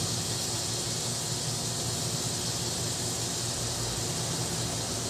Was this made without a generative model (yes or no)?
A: yes